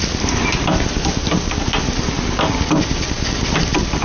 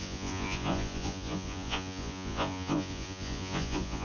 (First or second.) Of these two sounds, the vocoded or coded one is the second